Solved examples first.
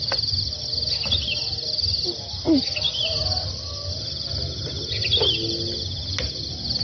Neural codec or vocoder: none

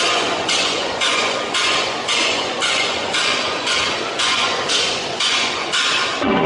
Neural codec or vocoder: vocoder, Vocos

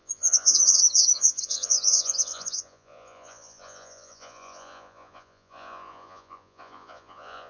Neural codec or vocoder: vocoder, Vocos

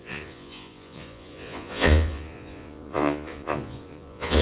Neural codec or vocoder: vocoder, Vocos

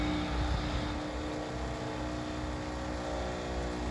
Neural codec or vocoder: none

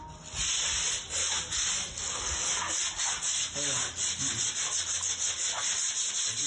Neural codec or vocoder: none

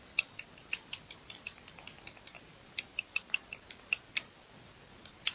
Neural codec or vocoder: none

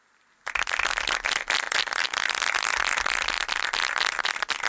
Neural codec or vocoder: none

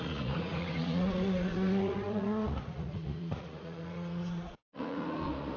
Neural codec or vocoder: vocoder, Vocos